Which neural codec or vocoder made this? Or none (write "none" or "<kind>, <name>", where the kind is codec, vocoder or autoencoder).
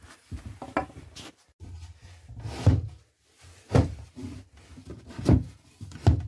none